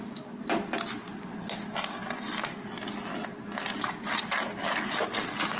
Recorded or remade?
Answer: recorded